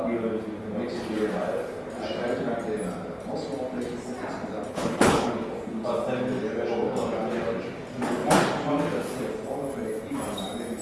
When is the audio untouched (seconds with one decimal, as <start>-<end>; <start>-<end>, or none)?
0.0-4.7; 5.3-10.8